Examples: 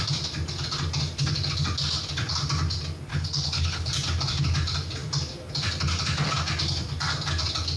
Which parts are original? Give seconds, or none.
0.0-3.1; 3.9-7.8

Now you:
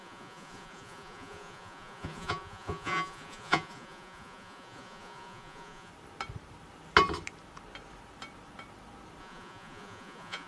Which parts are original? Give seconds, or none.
5.9-9.2